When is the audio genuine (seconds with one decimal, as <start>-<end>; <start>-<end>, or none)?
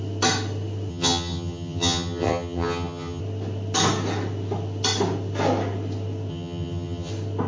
0.0-0.9; 3.2-6.3; 7.1-7.5